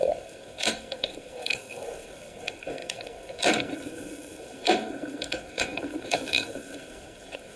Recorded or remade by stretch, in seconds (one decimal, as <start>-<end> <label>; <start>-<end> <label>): 0.0-7.6 remade